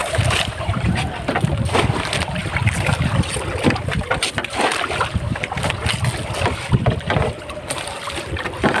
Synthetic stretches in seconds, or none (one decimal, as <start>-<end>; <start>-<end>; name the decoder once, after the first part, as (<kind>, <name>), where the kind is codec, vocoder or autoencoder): 0.0-1.1 (vocoder, BigVGAN v2)